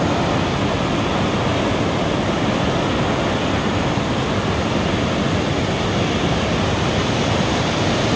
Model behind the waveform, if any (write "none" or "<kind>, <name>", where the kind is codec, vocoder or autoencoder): none